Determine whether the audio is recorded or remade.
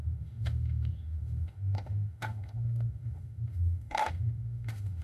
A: remade